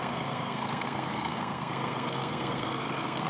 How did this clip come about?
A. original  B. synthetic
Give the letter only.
B